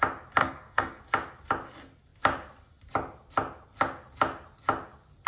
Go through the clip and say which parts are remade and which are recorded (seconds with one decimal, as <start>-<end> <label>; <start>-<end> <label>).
0.0-0.4 recorded; 0.4-1.0 remade; 1.0-5.3 recorded